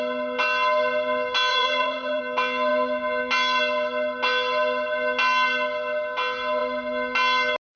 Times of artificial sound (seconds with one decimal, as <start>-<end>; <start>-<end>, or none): 1.5-2.2